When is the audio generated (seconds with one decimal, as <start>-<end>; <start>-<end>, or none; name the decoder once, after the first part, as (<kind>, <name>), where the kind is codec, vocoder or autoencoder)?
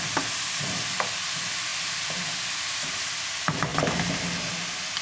none